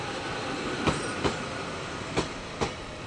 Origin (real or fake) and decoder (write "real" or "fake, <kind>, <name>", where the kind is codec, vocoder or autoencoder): real